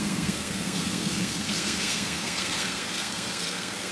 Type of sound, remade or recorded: remade